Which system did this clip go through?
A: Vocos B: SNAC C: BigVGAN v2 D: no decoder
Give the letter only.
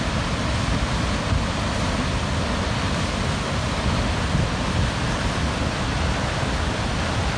D